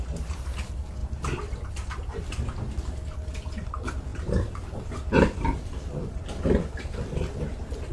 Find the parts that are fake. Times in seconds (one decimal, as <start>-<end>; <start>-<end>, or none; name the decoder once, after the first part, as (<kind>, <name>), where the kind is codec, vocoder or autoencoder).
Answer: 4.1-7.3 (vocoder, BigVGAN v2)